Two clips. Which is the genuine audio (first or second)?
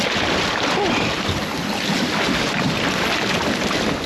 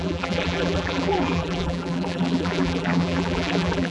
first